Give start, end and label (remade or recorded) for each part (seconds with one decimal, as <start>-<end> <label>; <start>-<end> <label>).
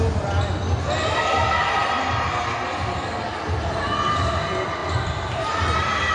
0.0-4.8 recorded; 4.8-6.1 remade